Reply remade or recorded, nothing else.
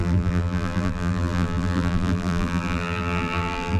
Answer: remade